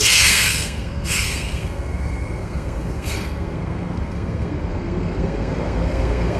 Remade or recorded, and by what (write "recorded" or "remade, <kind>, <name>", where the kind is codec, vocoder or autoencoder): remade, codec, SNAC